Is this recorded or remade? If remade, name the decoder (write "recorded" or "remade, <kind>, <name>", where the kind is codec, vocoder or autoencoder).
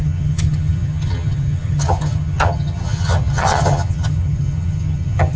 remade, vocoder, HiFi-GAN